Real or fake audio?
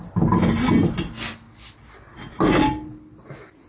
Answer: real